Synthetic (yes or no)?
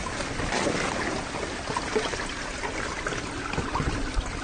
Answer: no